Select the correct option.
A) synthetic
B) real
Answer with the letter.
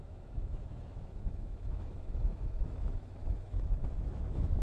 A